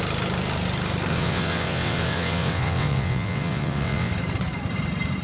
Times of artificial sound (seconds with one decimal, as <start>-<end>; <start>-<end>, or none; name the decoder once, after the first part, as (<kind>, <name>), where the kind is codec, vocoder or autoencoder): 1.1-4.1 (vocoder, WaveNeXt)